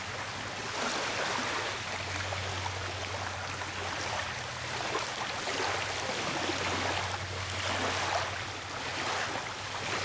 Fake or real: real